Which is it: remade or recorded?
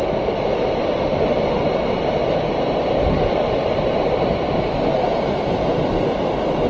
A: recorded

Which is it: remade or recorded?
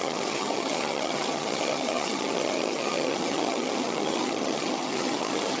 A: remade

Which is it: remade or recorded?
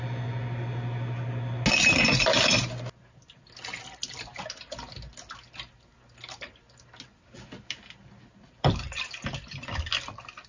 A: recorded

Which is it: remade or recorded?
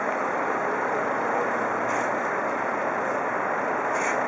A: recorded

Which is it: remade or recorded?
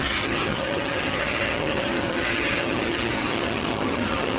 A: remade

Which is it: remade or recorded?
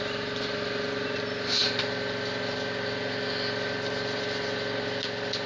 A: recorded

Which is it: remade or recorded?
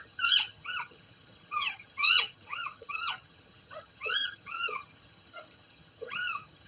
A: remade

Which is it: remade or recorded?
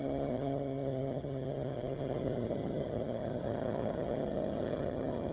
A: remade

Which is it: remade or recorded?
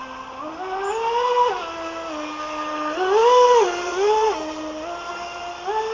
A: recorded